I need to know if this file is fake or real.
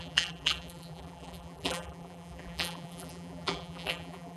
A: fake